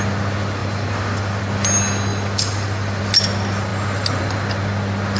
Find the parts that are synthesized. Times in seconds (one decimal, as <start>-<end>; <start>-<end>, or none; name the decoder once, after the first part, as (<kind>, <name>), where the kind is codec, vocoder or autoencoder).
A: 0.6-1.4 (vocoder, BigVGAN v2); 2.1-3.0